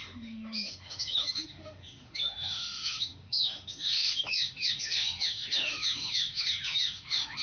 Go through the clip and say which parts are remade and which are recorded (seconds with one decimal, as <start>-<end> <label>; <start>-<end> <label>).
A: 0.0-7.4 remade